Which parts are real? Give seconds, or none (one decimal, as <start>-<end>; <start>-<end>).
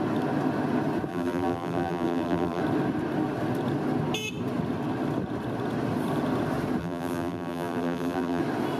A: 0.0-1.1; 2.6-6.8; 8.4-8.8